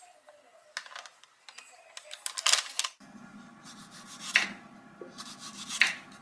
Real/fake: real